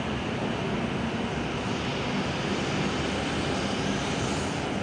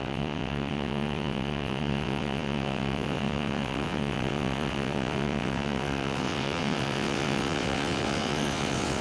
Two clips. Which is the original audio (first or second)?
first